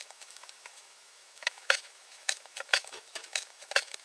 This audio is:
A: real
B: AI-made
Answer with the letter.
B